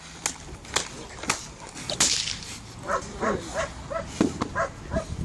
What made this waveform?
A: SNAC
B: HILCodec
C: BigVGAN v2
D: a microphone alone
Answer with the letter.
D